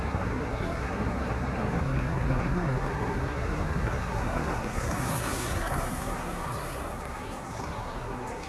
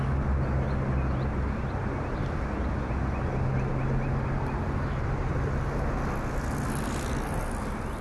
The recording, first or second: second